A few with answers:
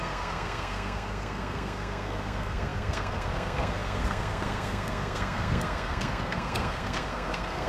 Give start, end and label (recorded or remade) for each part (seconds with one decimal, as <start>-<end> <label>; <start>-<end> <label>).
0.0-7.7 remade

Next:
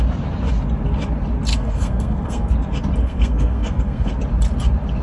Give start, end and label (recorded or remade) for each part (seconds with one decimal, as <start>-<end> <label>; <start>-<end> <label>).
0.0-1.5 recorded; 1.5-2.5 remade; 2.5-3.0 recorded; 3.0-4.1 remade; 4.1-5.0 recorded

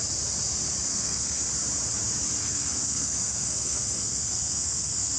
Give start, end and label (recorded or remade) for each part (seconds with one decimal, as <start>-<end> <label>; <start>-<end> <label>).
0.0-0.9 recorded; 0.9-1.5 remade; 1.5-2.4 recorded; 2.4-5.2 remade

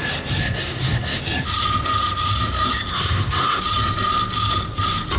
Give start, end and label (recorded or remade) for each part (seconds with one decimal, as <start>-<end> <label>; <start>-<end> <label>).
0.0-0.4 recorded; 0.4-1.2 remade; 1.2-2.9 recorded; 2.9-3.6 remade; 3.6-5.2 recorded

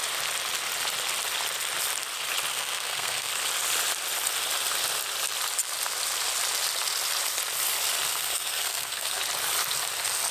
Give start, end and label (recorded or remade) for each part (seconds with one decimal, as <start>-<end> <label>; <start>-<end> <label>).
0.0-2.5 recorded; 2.5-3.3 remade; 3.3-8.1 recorded; 8.1-9.2 remade; 9.2-10.3 recorded